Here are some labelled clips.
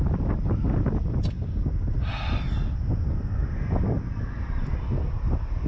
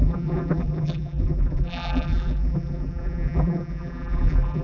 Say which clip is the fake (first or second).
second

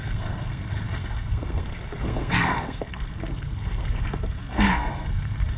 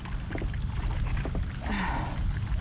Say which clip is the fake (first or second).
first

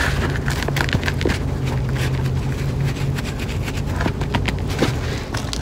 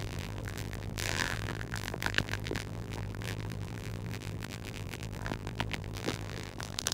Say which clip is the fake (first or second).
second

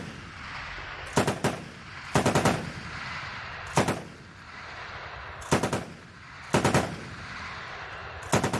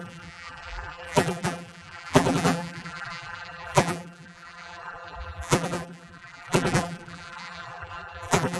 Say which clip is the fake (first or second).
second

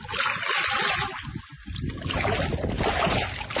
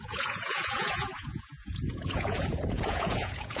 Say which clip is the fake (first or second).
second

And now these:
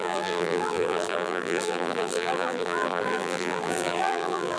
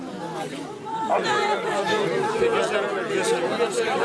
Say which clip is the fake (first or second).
first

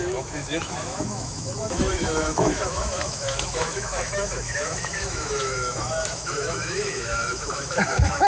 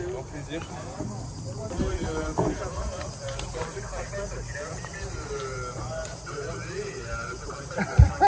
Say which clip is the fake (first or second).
first